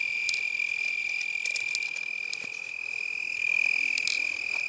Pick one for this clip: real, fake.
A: real